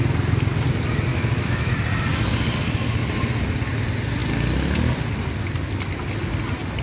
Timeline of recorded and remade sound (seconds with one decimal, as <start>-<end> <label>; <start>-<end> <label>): 0.0-1.1 recorded; 1.1-1.7 remade; 1.7-6.8 recorded